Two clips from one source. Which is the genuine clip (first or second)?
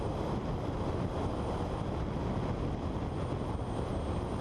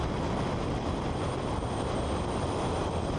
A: first